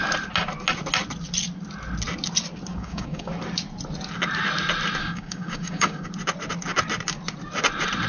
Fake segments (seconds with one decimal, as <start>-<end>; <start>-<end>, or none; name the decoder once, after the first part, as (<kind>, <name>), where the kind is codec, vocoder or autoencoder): 2.7-3.3 (codec, DAC); 5.0-6.1